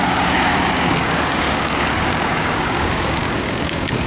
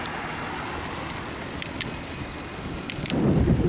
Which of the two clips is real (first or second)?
second